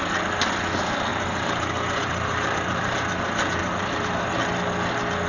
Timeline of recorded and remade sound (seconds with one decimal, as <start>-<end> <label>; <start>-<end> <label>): 0.0-1.1 recorded; 1.1-4.3 remade; 4.3-5.3 recorded